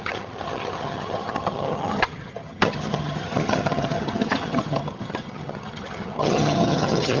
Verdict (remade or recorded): remade